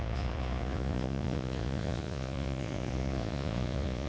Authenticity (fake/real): fake